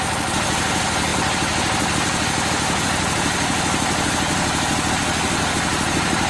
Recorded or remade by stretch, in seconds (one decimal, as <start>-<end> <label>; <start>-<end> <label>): 0.0-6.3 recorded